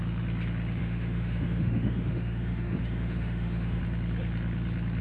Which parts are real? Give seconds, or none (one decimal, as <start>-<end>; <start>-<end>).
0.0-0.8; 3.8-5.0